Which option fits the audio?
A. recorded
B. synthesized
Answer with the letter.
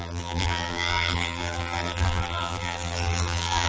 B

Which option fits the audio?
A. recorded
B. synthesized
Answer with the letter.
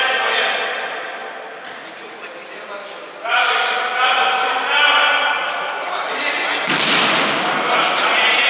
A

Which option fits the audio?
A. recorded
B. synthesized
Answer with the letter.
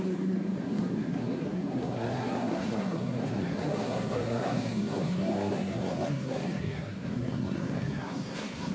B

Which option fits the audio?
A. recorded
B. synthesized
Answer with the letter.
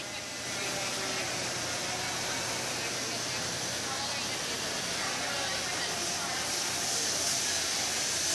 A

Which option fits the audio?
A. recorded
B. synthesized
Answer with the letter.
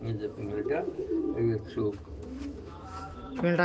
B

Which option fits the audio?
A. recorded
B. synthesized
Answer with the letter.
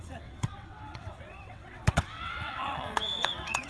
B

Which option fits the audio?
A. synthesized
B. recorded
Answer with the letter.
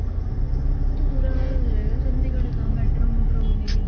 B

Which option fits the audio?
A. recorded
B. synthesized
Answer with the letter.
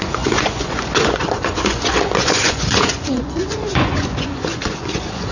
B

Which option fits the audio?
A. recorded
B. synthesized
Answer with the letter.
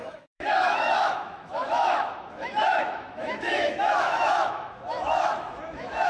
B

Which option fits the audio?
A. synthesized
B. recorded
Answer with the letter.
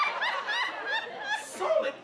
B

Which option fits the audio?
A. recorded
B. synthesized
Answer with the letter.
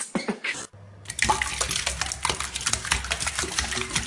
A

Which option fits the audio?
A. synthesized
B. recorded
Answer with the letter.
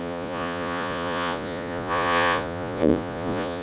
A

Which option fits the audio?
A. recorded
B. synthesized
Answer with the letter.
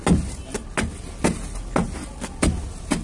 A